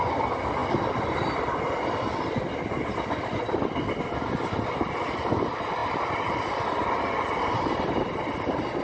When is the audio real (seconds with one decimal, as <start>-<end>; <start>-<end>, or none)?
0.0-8.8